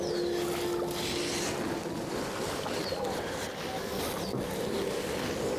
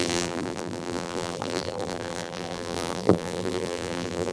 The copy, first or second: second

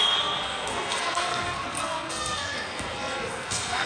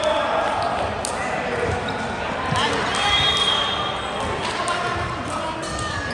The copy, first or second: first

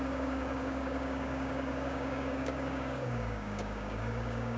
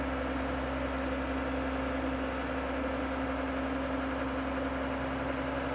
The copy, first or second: first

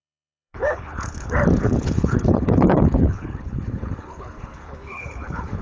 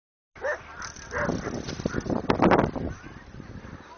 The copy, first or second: first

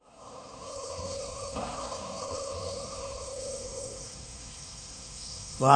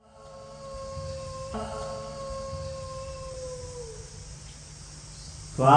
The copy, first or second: first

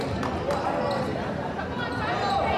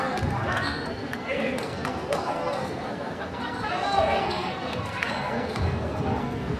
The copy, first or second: second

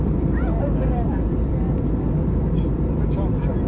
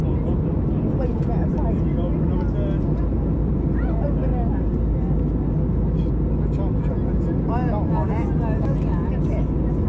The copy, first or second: first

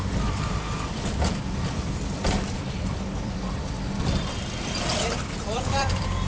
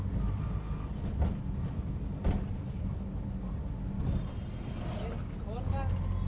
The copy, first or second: first